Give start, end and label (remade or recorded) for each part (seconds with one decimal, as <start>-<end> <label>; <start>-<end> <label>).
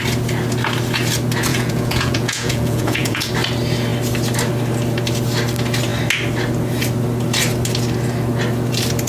0.0-1.5 recorded; 1.5-3.3 remade; 3.3-9.1 recorded